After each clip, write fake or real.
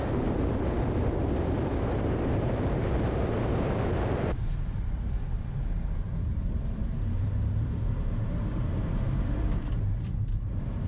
fake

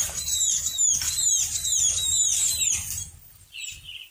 real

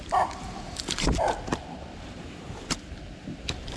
fake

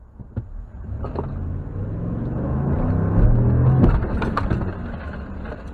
real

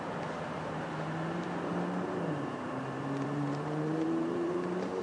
fake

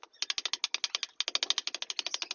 real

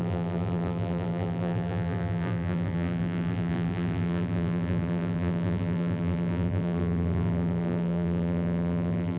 fake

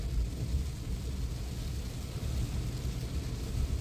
real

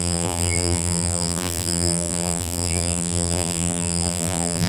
fake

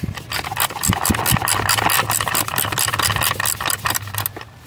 real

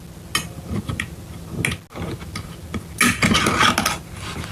real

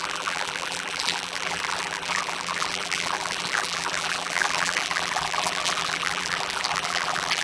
fake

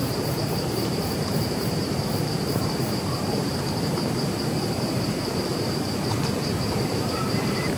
fake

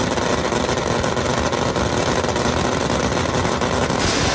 real